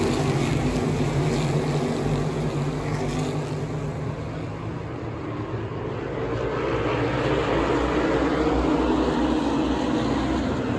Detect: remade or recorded recorded